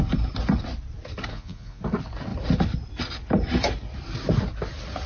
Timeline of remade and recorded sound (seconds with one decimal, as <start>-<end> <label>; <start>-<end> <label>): 0.0-1.3 recorded; 1.3-1.8 remade; 1.8-5.1 recorded